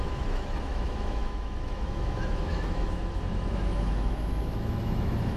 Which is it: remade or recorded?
remade